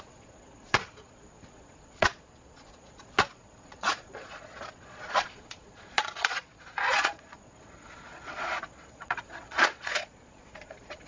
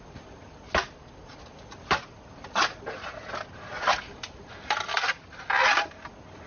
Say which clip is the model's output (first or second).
first